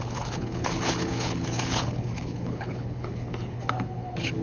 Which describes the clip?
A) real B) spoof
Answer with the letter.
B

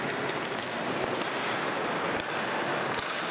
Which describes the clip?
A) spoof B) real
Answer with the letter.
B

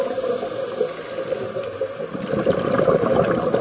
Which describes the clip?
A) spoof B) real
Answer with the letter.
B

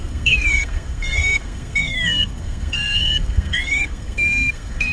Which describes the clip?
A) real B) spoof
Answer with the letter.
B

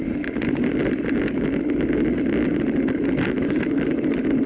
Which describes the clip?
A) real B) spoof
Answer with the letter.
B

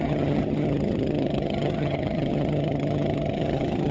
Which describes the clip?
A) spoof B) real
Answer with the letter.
A